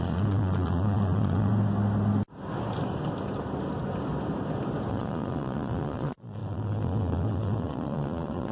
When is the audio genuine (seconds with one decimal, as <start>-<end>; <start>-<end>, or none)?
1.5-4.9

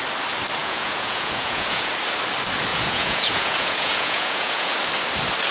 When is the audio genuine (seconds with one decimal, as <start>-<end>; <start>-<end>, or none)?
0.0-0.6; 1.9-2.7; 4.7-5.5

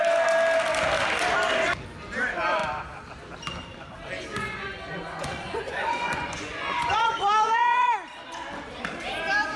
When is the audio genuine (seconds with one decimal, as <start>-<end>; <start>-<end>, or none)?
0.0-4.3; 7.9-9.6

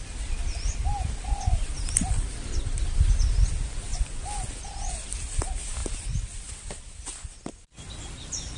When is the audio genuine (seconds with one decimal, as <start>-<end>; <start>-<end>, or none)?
0.0-3.9; 4.5-8.6